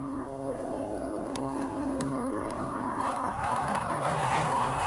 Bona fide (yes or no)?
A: no